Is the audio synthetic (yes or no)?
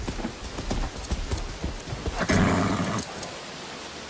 no